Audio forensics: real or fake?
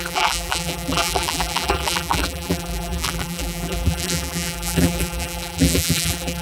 fake